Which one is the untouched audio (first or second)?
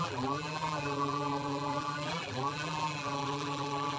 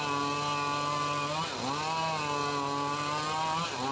second